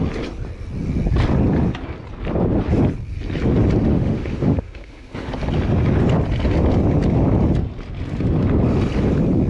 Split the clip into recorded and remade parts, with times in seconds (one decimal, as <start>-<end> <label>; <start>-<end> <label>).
0.0-3.9 recorded; 3.9-5.3 remade; 5.3-9.5 recorded